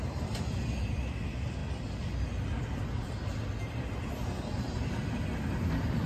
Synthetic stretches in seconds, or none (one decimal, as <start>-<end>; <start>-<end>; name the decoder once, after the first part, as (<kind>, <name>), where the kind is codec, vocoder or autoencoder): none

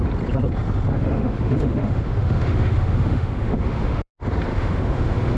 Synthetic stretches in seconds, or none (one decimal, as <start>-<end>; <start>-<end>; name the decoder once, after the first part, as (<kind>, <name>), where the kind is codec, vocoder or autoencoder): 0.9-4.1 (autoencoder, DAC-VAE); 4.5-5.4

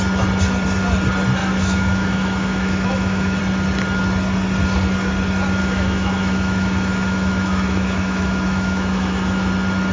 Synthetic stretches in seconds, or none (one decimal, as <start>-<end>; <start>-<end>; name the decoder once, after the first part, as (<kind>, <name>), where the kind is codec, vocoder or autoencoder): 1.4-3.4 (autoencoder, DAC-VAE); 5.6-9.5

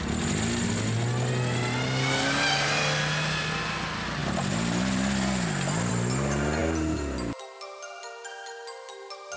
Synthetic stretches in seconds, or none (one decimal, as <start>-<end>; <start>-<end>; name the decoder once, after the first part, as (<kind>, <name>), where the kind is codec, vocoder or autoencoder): none

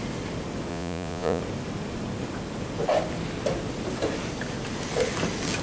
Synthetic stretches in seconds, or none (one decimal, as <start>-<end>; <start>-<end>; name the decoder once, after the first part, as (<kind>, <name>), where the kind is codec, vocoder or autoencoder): 0.7-1.4 (vocoder, Vocos)

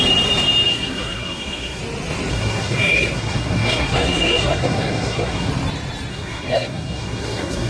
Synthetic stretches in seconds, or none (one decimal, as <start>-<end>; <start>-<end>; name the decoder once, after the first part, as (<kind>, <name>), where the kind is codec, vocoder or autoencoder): 0.7-1.8 (codec, SNAC); 2.3-5.5; 6.1-7.7

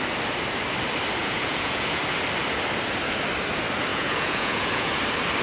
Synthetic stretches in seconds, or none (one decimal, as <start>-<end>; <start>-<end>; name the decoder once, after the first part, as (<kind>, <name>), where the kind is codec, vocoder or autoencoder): 1.2-2.0 (vocoder, Vocos); 3.9-4.9